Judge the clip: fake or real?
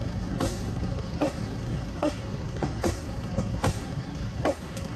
fake